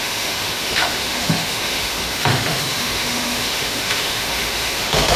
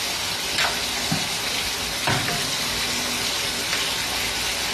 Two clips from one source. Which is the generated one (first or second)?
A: first